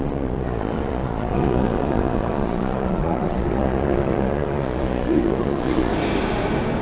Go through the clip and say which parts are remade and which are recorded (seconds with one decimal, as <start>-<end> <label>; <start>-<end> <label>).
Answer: 0.0-5.9 remade; 5.9-6.8 recorded